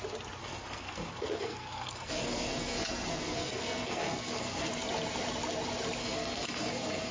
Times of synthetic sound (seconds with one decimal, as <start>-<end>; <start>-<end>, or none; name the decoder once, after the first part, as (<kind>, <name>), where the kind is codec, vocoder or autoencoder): 0.4-4.7 (codec, SNAC); 6.0-7.1